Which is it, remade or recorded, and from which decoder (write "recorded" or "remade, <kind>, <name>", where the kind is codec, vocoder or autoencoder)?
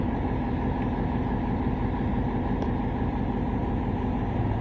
recorded